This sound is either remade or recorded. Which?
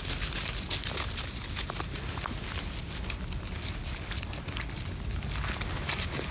recorded